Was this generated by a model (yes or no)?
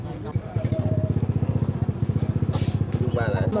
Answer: no